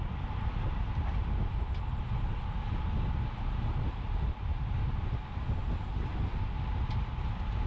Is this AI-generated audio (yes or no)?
no